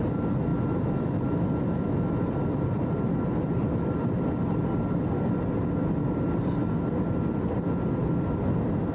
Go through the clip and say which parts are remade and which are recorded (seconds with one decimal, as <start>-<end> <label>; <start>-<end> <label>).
0.0-8.9 recorded